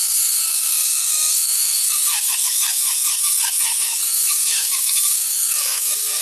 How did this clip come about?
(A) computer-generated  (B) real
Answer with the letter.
A